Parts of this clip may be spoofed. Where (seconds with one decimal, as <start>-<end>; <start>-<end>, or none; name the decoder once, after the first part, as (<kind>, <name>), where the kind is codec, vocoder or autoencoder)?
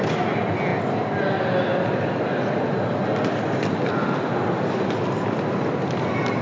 none